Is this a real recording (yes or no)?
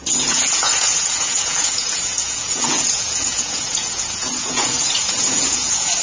no